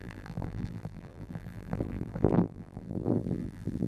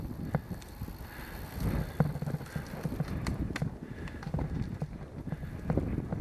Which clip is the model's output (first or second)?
first